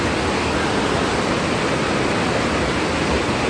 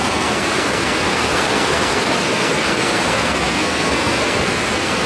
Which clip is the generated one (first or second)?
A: second